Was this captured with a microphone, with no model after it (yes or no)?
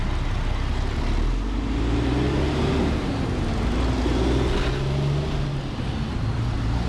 yes